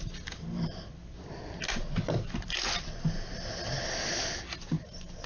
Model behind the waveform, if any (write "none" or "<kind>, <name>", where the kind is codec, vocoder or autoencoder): none